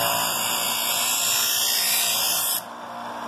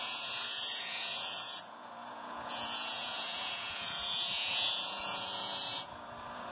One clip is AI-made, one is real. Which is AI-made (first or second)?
second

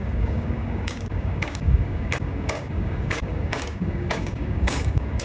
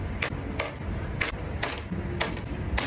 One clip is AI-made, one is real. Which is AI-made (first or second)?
first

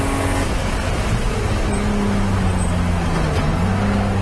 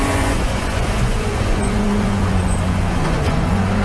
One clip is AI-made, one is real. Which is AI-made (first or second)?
second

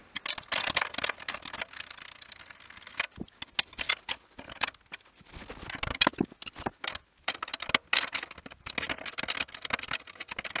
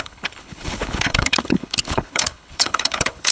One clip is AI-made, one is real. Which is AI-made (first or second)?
second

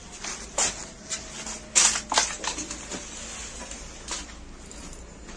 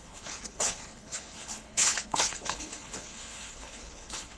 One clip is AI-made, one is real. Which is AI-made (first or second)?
second